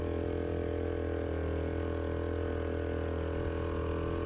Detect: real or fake real